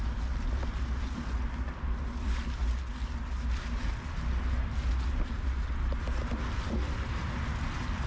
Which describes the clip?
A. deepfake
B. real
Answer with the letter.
B